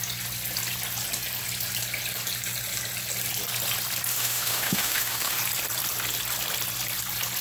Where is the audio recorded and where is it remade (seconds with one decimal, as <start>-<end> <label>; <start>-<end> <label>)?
0.0-4.1 recorded; 4.1-5.4 remade; 5.4-7.4 recorded